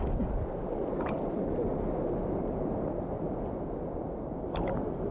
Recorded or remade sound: recorded